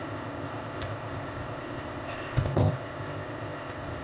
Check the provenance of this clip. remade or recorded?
remade